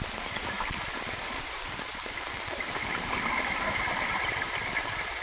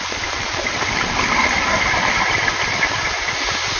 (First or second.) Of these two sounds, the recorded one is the second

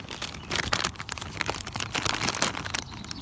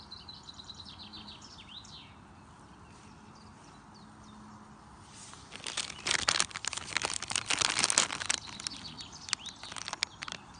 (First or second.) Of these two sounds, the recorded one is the second